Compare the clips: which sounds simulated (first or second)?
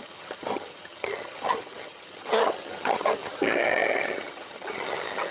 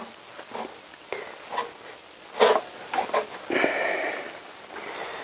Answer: first